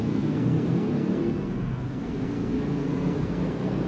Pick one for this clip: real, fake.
fake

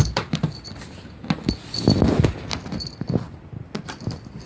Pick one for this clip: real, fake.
real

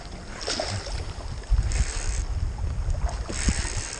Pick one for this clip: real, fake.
real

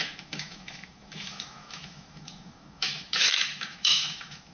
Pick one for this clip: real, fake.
fake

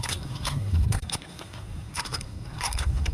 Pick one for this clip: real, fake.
fake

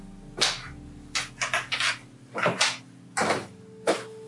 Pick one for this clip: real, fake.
real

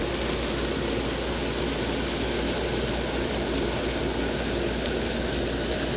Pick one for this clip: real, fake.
real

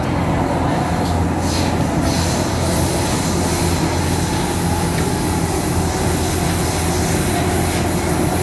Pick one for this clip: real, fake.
real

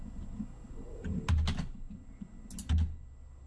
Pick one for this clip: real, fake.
real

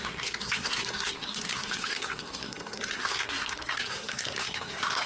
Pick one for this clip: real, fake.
fake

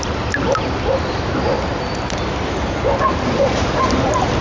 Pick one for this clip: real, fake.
real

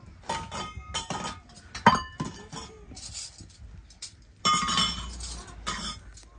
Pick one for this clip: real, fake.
real